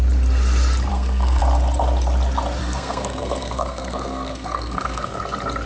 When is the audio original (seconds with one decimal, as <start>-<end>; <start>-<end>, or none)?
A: 0.0-0.9; 1.4-2.6; 5.2-5.7